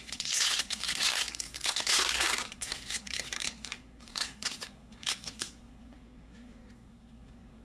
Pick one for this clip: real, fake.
fake